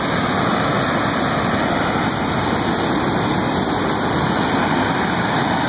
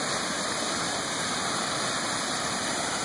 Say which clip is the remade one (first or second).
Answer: second